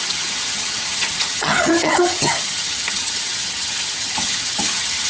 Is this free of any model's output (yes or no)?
no